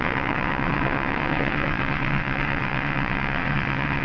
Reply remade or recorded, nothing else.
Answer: remade